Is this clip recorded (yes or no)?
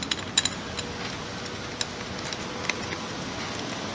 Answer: yes